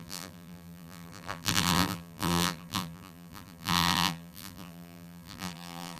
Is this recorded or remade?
remade